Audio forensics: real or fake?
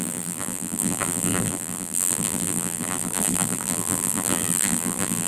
fake